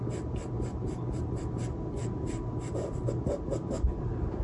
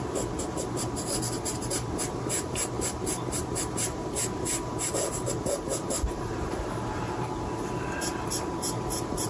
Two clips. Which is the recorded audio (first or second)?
first